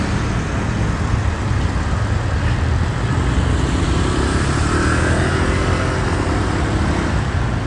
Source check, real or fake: real